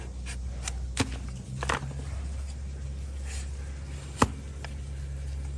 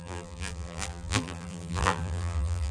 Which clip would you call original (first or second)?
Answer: first